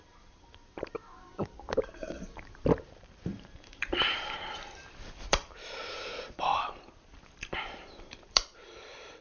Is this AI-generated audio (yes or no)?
yes